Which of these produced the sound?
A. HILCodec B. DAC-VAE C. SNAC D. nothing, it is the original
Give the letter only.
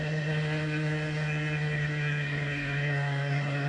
C